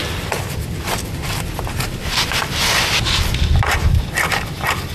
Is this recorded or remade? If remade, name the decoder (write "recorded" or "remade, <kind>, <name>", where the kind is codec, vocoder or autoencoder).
recorded